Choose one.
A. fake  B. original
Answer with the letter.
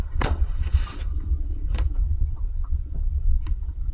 A